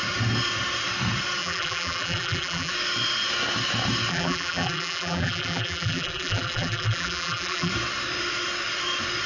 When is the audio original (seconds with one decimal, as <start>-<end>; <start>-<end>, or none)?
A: 0.0-1.4; 2.7-4.1; 7.7-9.3

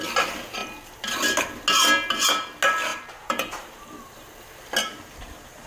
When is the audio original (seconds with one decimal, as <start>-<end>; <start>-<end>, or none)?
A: 0.0-2.9; 4.1-4.8

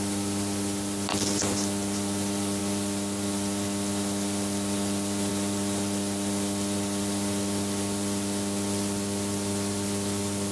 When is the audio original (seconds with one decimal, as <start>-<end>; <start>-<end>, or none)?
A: 0.0-10.5